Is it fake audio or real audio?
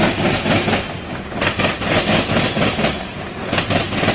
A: real